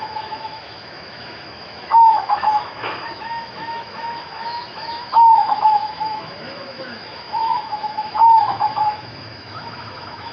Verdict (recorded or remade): remade